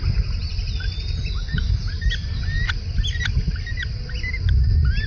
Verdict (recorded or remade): recorded